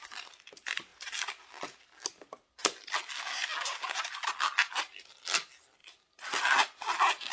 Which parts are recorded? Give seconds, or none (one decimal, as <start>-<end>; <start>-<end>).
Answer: 0.0-7.3